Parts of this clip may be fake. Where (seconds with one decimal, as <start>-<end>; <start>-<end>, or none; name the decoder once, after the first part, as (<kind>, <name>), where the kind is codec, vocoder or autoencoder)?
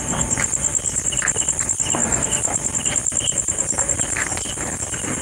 none